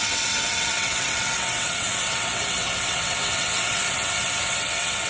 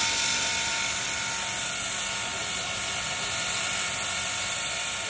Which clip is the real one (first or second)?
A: second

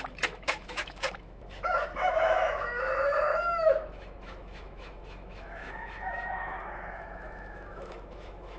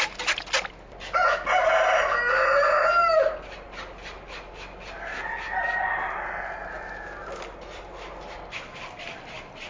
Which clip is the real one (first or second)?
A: second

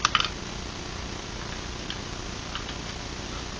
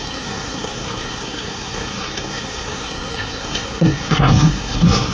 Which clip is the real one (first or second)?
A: first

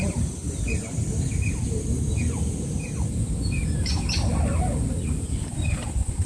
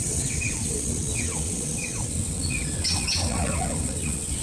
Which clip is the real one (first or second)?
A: first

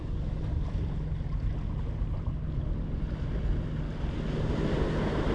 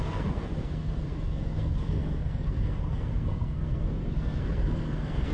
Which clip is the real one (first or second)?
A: first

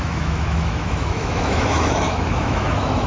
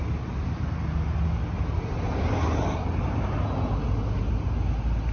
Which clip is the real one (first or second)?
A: second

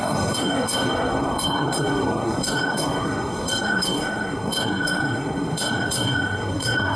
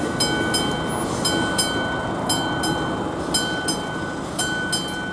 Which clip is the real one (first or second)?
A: second